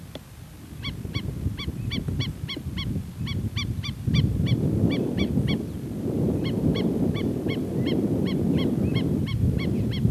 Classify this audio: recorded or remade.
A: recorded